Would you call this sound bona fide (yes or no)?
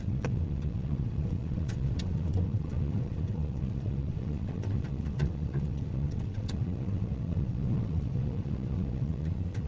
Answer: no